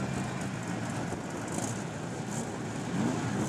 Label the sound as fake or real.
real